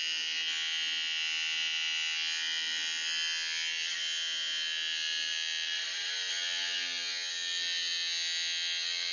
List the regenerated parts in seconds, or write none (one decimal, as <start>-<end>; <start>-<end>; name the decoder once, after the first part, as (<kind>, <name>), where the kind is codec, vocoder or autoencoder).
6.3-7.3 (vocoder, HiFi-GAN)